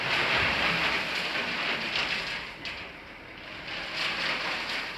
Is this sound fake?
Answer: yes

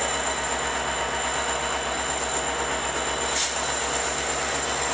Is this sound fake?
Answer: no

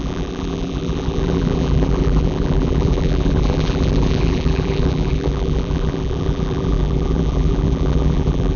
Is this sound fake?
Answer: yes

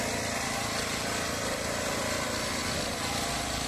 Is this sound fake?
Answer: no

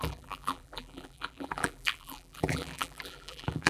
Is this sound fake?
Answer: yes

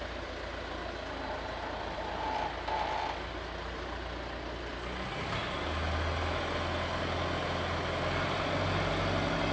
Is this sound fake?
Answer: no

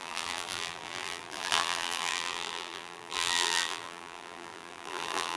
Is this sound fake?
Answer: yes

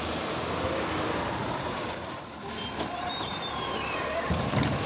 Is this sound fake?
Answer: no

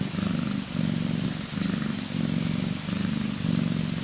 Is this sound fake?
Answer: no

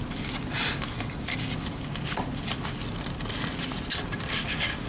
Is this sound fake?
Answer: no